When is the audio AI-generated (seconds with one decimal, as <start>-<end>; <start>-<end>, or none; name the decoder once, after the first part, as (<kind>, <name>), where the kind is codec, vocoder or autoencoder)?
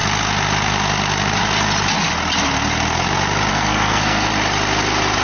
3.5-4.3 (codec, SNAC)